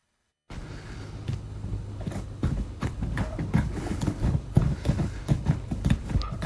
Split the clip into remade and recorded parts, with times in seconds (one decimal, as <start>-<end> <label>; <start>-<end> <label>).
0.0-6.5 remade